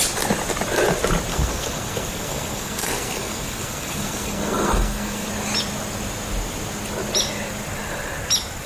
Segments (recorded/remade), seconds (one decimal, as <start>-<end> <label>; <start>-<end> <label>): 0.0-1.3 recorded; 1.3-5.3 remade; 5.3-8.7 recorded